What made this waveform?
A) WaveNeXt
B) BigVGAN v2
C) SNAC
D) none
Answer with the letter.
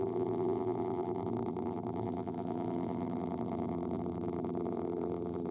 B